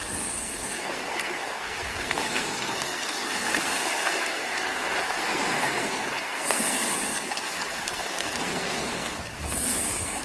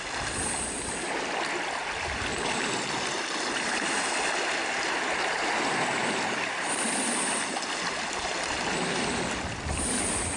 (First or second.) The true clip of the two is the second